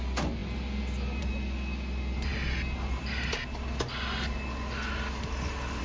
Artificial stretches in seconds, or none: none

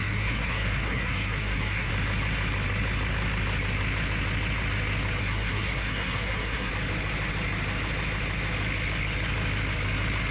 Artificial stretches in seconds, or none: 0.0-1.9 (codec, SNAC); 5.2-6.7

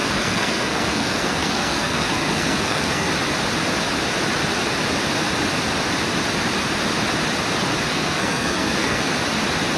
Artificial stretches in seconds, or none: 0.0-3.1 (codec, SNAC); 7.9-9.1

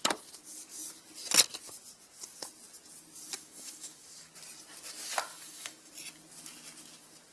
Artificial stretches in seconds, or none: 3.3-4.3 (autoencoder, DAC-VAE); 5.3-5.9

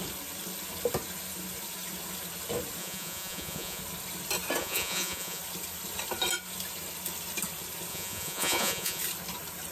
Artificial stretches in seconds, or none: 2.8-3.8 (vocoder, Vocos); 4.6-5.4; 7.9-9.0

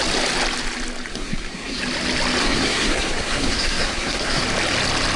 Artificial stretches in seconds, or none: 1.1-1.8 (codec, SNAC); 2.4-4.4